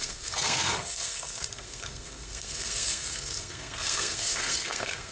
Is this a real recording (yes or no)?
no